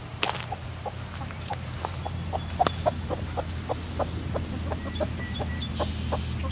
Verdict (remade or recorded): recorded